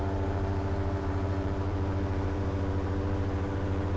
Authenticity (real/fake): fake